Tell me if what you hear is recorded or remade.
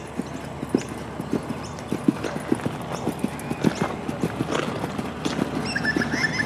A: recorded